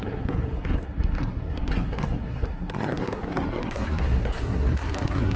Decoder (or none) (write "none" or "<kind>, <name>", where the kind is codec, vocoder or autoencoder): codec, SNAC